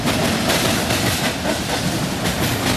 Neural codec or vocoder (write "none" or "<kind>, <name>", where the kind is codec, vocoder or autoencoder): none